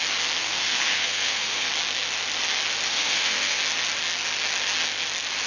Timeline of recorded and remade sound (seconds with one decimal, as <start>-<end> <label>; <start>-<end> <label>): 0.0-0.4 recorded; 0.4-1.7 remade; 1.7-2.9 recorded; 2.9-3.6 remade; 3.6-5.5 recorded